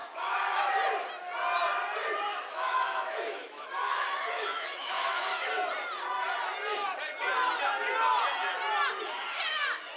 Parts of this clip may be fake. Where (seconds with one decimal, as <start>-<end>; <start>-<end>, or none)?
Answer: 0.0-0.7; 2.3-5.5